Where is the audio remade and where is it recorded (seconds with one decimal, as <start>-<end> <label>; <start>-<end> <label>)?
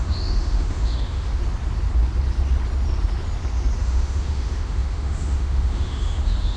0.0-1.4 remade; 1.4-3.8 recorded; 3.8-6.6 remade